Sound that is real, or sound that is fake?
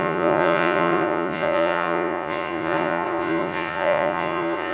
fake